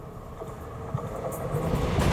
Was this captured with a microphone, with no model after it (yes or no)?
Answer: yes